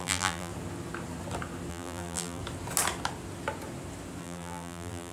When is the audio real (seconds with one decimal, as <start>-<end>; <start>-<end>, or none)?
0.5-1.7; 2.4-4.2